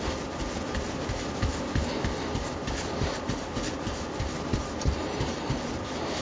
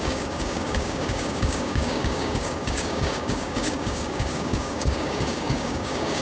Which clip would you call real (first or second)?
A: first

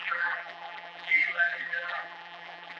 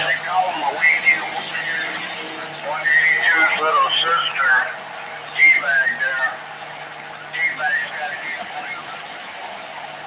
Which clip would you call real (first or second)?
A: second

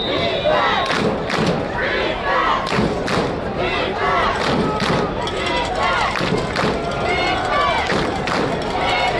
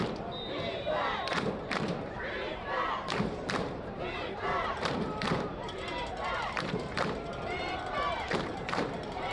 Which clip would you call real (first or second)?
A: first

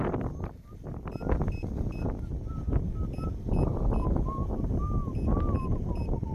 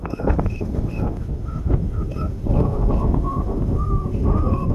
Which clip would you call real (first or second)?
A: first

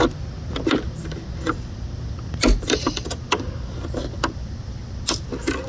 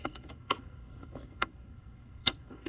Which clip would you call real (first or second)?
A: first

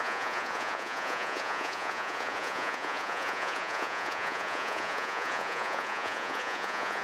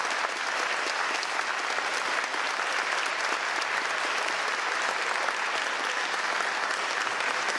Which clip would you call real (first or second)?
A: second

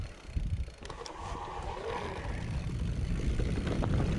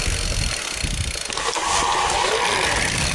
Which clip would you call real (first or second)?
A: second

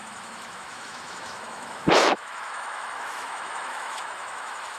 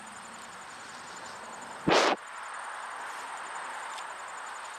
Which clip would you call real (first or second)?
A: second